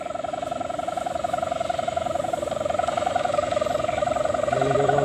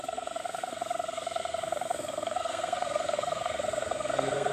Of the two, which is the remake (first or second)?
second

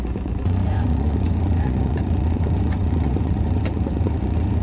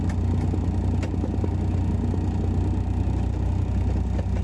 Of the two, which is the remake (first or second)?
first